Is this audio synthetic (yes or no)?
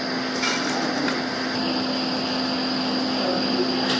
no